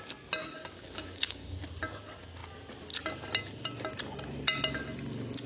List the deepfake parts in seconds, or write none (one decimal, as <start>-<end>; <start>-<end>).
0.4-1.6